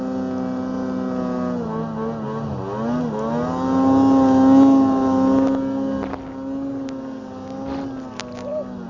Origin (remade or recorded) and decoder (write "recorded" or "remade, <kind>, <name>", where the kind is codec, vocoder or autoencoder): recorded